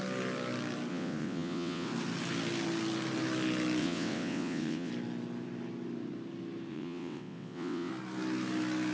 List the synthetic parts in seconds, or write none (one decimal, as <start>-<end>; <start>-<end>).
0.9-1.9; 3.8-4.9; 6.7-7.9